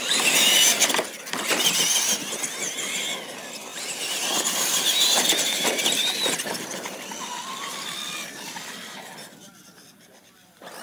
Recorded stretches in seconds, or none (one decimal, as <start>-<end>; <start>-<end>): 0.0-3.7; 7.0-10.8